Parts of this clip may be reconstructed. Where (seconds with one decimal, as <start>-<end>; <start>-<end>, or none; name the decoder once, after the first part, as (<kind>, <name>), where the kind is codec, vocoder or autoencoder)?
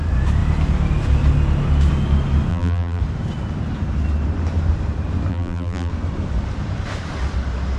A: 2.5-3.0 (vocoder, BigVGAN v2); 5.3-5.9